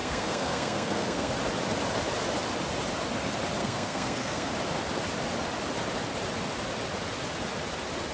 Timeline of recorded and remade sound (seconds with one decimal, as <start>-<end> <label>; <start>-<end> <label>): 0.0-1.3 remade; 1.3-3.6 recorded; 3.6-4.5 remade; 4.5-8.1 recorded